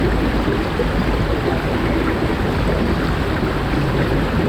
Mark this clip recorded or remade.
recorded